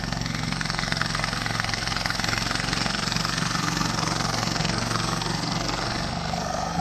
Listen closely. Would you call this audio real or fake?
fake